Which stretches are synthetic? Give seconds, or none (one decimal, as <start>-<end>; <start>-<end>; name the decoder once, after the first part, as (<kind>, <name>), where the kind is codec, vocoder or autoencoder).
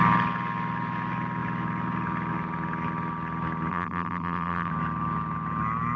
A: 3.7-4.7 (vocoder, BigVGAN v2)